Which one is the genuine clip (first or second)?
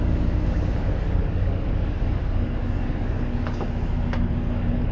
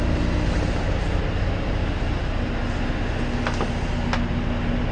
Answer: second